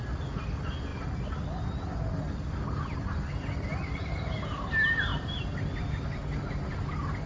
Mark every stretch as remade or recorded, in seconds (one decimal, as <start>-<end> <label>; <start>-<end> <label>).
0.0-7.3 recorded